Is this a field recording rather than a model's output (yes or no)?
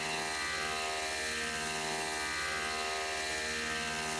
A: yes